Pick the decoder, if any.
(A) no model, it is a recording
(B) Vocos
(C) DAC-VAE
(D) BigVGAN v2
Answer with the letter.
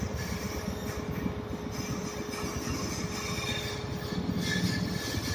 A